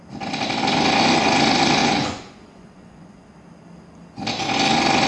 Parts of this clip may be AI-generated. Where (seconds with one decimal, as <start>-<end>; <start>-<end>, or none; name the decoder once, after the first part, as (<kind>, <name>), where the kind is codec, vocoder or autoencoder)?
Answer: 1.8-3.3 (vocoder, Vocos)